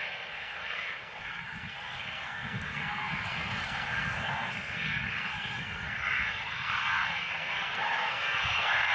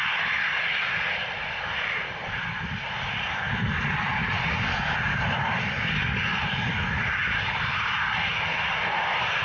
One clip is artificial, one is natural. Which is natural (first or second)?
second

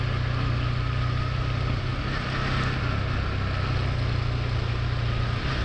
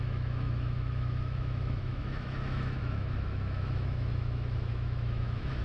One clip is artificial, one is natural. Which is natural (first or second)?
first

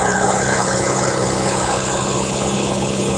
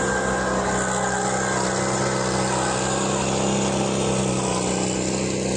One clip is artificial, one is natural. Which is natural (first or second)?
second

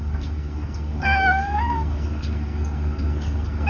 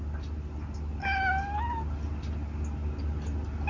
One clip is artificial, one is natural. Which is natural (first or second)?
second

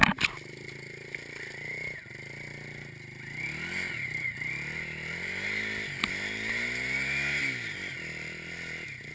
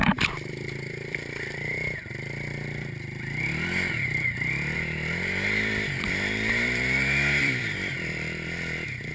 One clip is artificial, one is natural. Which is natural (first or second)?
first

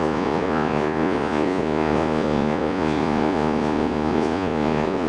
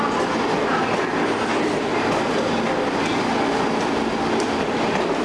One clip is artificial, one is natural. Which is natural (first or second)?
second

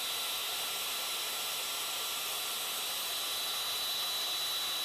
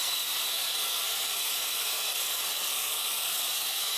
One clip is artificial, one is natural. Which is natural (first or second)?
first